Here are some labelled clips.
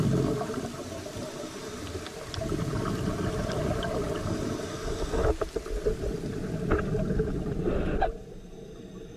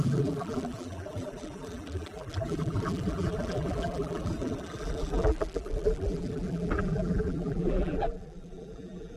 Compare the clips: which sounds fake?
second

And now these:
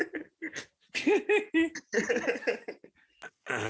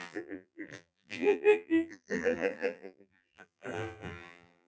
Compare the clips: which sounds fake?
second